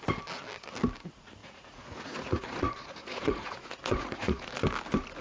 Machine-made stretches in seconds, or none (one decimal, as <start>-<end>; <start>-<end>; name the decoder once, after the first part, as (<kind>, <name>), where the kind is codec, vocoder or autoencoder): 1.4-4.5 (vocoder, Vocos)